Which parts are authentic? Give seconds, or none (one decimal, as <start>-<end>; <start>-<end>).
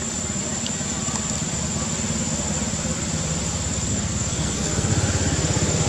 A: 0.0-3.9; 4.9-5.9